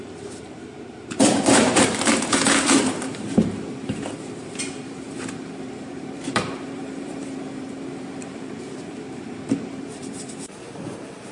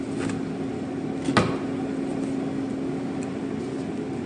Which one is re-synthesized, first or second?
first